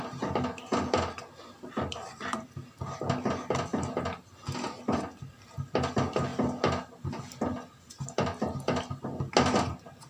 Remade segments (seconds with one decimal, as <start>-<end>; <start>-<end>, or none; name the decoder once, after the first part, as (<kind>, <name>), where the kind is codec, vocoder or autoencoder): none